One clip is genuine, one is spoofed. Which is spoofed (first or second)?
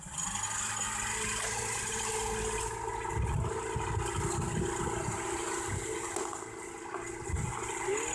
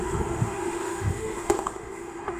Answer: second